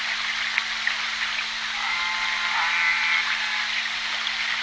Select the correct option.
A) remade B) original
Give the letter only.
B